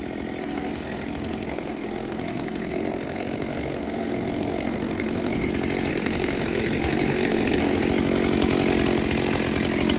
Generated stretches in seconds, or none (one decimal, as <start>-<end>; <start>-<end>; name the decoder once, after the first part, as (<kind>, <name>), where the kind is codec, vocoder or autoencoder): 0.4-5.5 (codec, SNAC); 5.9-7.8